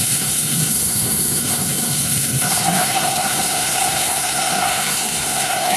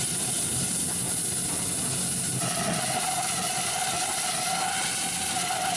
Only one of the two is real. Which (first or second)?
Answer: second